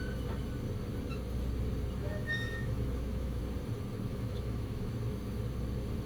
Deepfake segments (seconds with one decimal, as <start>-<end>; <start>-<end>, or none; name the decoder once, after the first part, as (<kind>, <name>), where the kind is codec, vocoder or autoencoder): 2.0-3.4 (autoencoder, DAC-VAE); 4.1-4.9